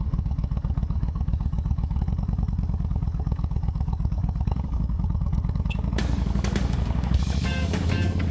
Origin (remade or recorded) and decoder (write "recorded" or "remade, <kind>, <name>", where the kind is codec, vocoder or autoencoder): remade, codec, DAC